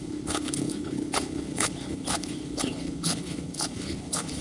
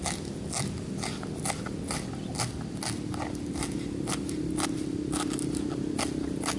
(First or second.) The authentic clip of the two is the second